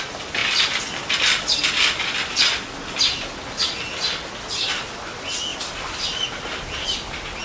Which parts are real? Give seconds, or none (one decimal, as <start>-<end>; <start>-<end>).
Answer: 0.0-7.4